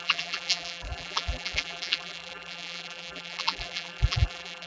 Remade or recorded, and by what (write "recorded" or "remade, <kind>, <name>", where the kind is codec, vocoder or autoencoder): remade, vocoder, BigVGAN v2